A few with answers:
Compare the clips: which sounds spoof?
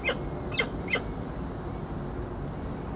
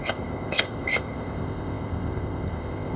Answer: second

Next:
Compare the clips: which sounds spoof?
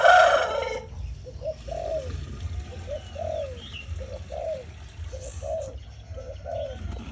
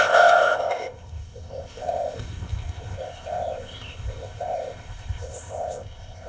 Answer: second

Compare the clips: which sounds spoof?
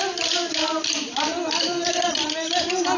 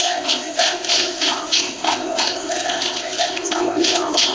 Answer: second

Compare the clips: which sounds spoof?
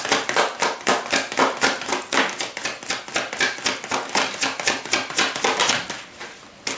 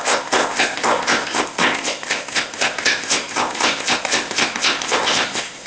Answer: second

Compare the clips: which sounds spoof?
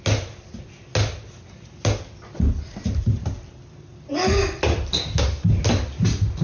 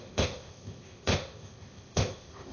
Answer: second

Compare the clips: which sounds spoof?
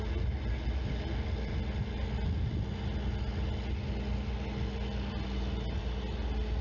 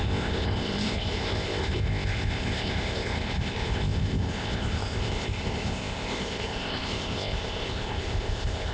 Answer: second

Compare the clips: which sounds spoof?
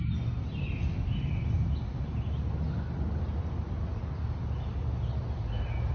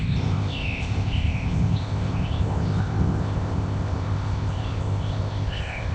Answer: second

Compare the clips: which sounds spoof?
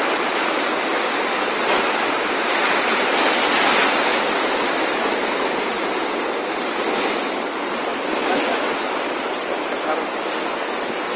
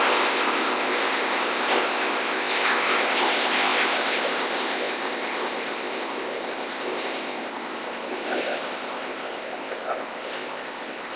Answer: second